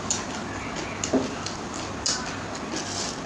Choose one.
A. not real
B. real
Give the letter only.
B